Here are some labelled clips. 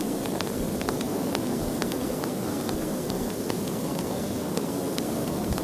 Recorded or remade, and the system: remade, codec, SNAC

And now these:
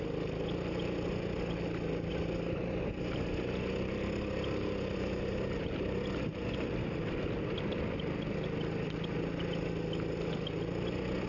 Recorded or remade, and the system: recorded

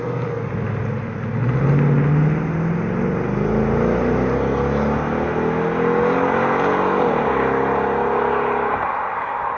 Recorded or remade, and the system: recorded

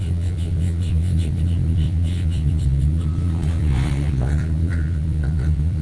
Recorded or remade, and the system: remade, vocoder, Vocos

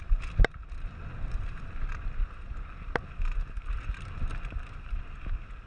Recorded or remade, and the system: recorded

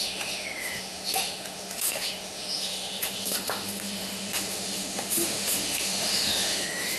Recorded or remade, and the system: remade, autoencoder, DAC-VAE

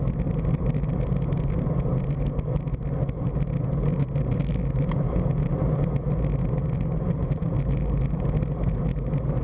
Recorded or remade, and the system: recorded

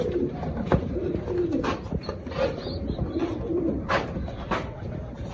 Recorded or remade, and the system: remade, vocoder, BigVGAN v2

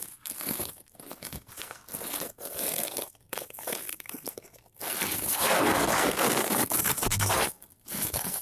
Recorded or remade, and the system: remade, codec, SNAC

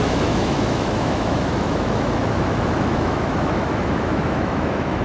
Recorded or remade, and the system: remade, autoencoder, DAC-VAE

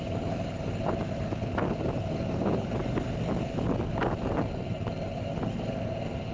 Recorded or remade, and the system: recorded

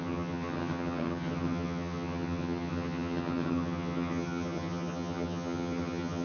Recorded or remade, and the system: remade, vocoder, HiFi-GAN